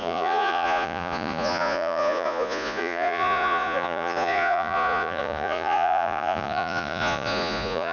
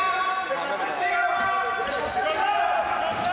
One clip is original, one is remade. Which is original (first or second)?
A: second